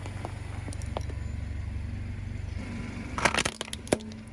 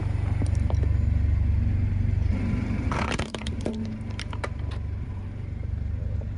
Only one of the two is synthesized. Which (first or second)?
second